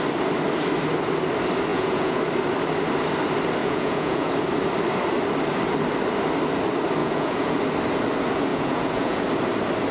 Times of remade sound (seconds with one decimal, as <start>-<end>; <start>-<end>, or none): 1.7-2.2; 3.6-4.3; 7.0-7.6; 8.5-9.2